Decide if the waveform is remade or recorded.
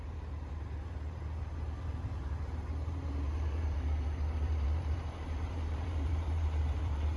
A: remade